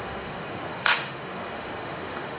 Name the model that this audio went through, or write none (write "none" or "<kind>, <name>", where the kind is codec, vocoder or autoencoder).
autoencoder, DAC-VAE